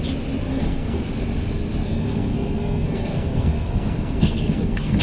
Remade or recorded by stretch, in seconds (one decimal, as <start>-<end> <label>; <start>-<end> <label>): 0.0-0.5 recorded; 0.5-1.0 remade; 1.0-1.9 recorded; 1.9-5.0 remade